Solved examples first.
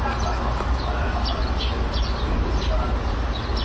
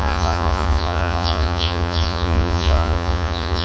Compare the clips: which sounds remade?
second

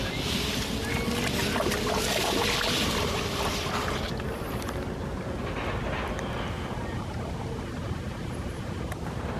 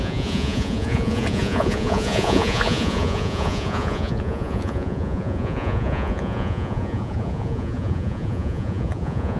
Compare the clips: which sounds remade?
second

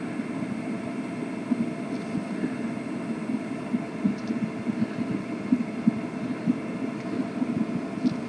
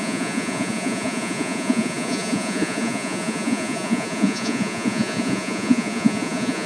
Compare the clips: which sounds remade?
second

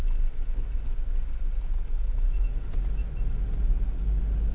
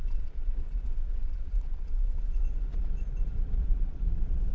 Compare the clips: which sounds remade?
second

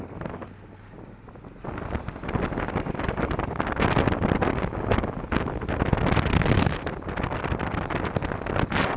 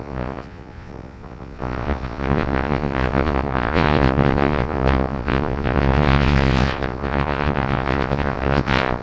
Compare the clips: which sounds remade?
second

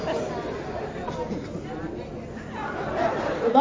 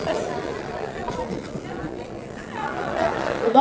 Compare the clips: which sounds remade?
second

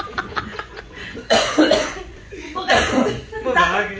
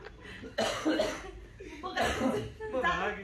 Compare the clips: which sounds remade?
first